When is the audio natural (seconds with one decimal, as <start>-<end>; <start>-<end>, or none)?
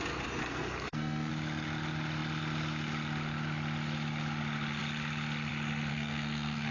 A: 0.0-0.4; 1.3-5.9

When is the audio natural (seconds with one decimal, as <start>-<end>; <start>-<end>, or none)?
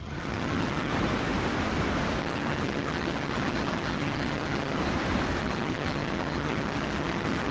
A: 0.9-2.2; 4.8-5.4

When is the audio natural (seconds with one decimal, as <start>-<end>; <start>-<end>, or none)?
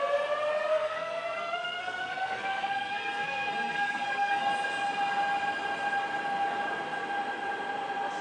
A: 0.0-0.5; 4.4-8.2